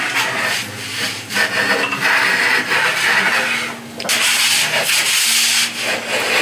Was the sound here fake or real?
real